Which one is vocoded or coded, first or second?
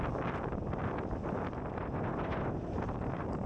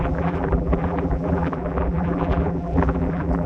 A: second